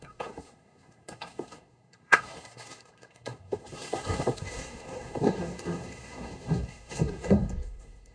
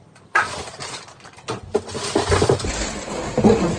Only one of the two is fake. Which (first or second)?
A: first